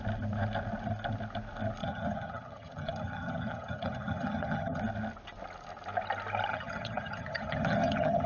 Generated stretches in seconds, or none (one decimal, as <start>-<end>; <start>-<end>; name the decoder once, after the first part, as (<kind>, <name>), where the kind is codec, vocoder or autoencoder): 1.8-4.8 (vocoder, HiFi-GAN); 6.5-8.3